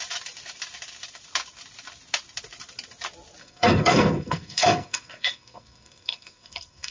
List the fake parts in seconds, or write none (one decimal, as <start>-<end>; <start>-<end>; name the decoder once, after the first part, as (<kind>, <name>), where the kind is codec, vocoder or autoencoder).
3.4-6.9 (codec, SNAC)